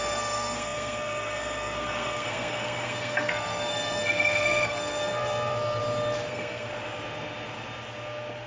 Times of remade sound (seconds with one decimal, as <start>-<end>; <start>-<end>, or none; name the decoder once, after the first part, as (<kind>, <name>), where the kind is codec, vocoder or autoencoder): 0.0-5.8 (codec, SNAC); 6.3-6.7

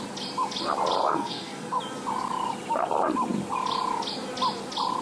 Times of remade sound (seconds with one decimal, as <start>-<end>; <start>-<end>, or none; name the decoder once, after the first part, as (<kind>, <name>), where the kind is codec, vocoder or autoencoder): 1.0-1.8 (codec, SNAC)